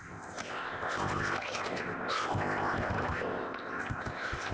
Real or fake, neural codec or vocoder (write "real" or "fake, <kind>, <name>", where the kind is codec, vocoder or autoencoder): fake, codec, ZipCodec